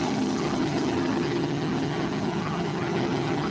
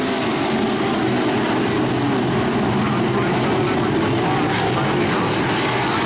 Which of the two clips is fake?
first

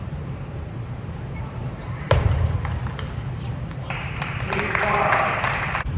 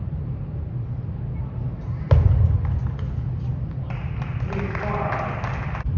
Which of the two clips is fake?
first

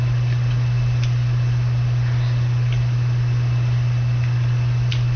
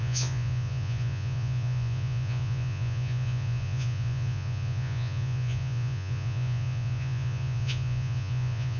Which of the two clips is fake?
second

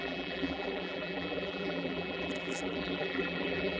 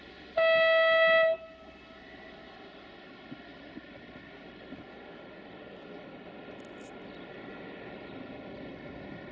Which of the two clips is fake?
first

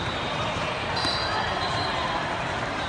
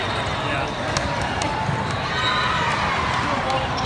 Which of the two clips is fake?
first